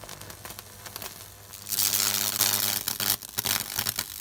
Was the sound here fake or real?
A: real